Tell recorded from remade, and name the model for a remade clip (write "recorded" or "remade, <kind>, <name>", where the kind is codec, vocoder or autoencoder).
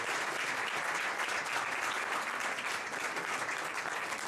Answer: remade, vocoder, BigVGAN v2